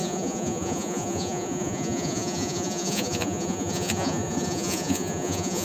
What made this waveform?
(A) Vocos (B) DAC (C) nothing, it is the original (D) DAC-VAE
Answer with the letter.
A